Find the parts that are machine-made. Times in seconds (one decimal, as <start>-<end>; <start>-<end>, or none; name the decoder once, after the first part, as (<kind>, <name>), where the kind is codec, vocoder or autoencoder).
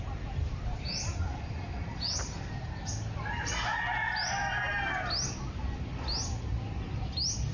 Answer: none